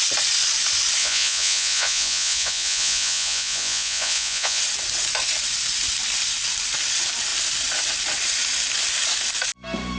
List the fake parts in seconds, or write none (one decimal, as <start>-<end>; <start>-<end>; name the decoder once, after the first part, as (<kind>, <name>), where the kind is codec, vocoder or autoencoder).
1.0-4.6 (vocoder, Vocos)